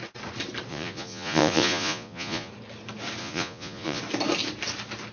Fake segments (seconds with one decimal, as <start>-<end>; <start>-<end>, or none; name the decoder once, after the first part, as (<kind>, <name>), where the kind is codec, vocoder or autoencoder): 0.7-2.5 (vocoder, Vocos); 3.2-4.0